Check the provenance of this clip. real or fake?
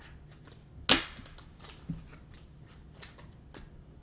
real